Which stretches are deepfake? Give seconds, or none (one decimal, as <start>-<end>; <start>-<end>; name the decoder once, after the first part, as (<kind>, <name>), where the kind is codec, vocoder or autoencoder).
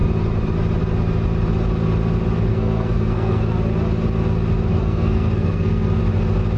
2.5-3.4 (codec, SNAC); 4.7-6.0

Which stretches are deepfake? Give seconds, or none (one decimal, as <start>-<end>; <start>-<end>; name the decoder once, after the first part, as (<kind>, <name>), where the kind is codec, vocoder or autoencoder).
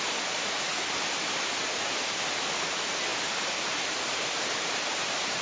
0.0-0.7 (vocoder, BigVGAN v2); 1.8-5.4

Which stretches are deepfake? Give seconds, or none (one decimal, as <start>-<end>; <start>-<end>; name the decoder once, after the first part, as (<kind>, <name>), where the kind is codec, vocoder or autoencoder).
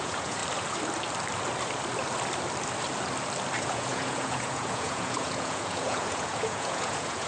0.0-0.4 (vocoder, Vocos); 3.6-7.3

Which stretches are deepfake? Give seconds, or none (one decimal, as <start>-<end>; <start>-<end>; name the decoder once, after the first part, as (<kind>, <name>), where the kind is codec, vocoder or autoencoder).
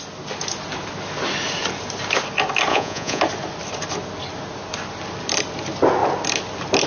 2.7-3.2 (vocoder, Vocos)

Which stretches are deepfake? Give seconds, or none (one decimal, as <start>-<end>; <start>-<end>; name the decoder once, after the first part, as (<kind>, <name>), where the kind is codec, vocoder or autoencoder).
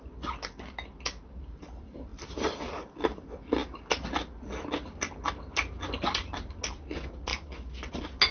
none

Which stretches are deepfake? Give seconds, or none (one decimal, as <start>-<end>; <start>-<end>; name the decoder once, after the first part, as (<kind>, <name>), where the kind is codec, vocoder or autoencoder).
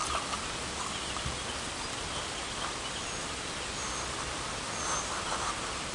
none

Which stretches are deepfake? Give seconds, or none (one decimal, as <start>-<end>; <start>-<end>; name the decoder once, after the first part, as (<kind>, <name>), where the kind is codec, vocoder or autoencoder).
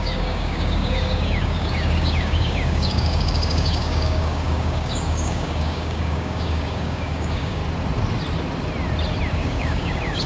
0.0-7.6 (codec, DAC); 9.3-10.3